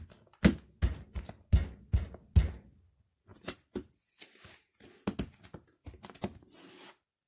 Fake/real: real